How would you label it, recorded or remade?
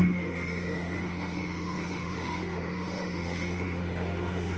remade